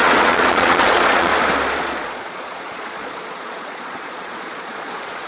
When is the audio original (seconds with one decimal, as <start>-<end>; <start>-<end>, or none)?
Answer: 1.3-1.8